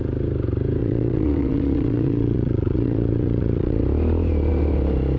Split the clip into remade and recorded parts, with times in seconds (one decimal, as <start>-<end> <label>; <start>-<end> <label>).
0.0-0.8 recorded; 0.8-3.8 remade; 3.8-5.2 recorded